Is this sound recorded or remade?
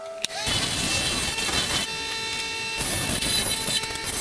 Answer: recorded